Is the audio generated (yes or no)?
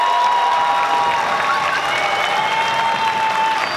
no